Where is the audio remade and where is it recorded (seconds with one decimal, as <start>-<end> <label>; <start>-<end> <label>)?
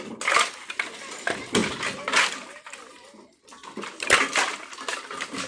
0.0-5.5 recorded